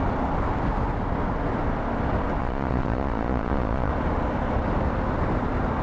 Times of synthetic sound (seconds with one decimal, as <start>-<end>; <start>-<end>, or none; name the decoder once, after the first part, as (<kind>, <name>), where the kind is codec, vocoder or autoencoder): 2.4-3.9 (vocoder, Vocos)